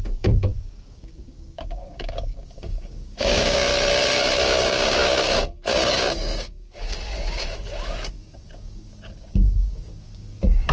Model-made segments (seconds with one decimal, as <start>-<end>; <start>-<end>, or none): 0.0-3.7; 4.5-10.7